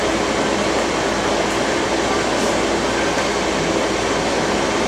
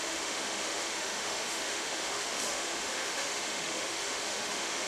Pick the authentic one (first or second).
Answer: first